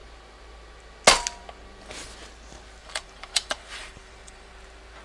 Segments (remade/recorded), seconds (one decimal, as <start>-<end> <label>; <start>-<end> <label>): 0.0-2.8 recorded; 2.8-4.5 remade; 4.5-5.0 recorded